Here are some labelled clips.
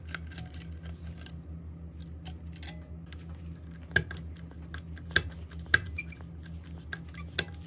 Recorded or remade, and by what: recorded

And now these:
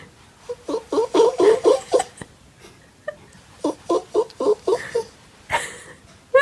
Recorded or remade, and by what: recorded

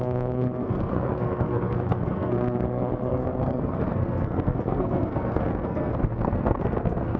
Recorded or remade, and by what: remade, codec, SNAC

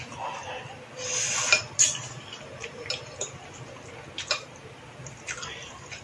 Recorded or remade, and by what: recorded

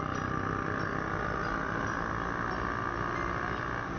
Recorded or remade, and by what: recorded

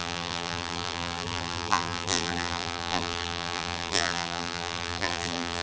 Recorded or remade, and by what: remade, vocoder, BigVGAN v2